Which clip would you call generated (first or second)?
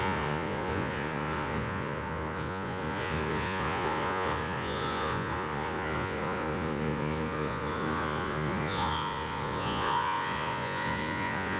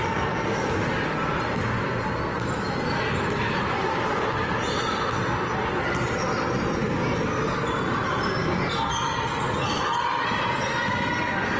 first